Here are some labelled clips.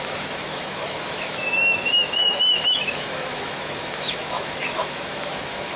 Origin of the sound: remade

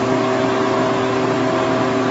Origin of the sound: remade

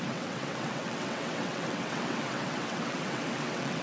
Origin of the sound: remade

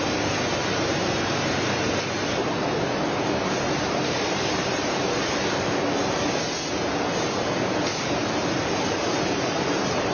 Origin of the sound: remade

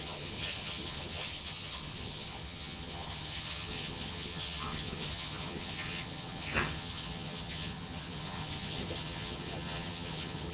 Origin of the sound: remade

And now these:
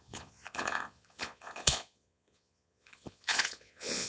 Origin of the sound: remade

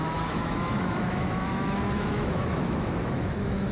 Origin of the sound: remade